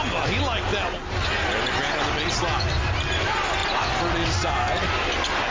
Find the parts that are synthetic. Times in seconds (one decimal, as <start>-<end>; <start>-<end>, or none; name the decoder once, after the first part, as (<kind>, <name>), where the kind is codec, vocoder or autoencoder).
none